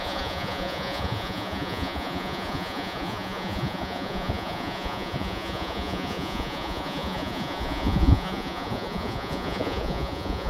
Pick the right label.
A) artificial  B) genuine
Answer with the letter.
A